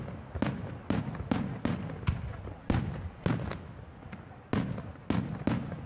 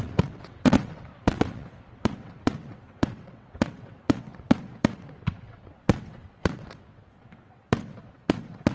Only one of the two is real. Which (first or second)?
first